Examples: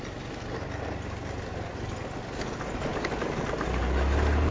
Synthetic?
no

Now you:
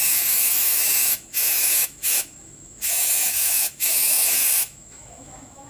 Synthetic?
yes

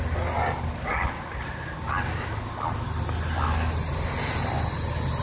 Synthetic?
no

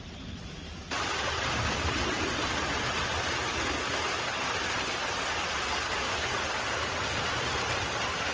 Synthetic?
no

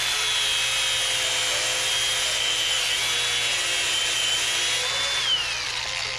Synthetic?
no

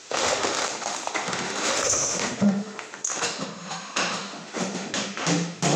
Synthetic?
yes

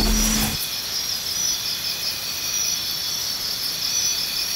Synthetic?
no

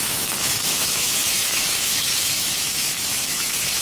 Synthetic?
yes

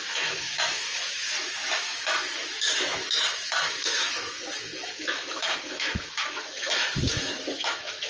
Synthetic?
yes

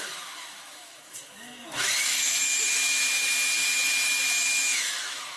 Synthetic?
yes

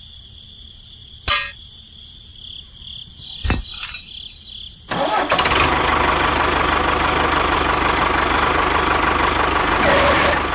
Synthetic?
no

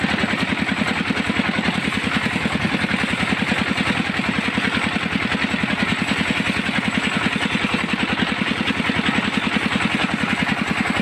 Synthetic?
no